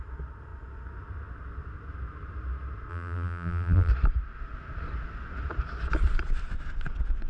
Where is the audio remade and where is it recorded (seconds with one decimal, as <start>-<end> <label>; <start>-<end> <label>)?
0.0-2.9 recorded; 2.9-3.9 remade; 3.9-7.3 recorded